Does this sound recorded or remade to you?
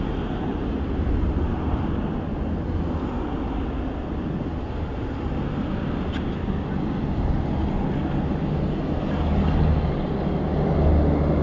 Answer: recorded